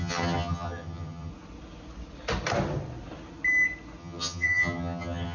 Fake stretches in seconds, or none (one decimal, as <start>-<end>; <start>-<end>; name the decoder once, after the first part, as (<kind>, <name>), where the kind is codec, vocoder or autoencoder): 0.0-1.3 (vocoder, HiFi-GAN); 4.0-5.3